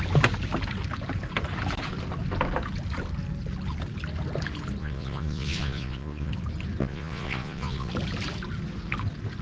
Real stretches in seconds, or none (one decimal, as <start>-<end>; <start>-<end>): 0.0-4.8; 6.3-6.8; 7.9-9.4